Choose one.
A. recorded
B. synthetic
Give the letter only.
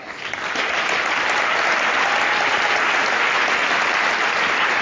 A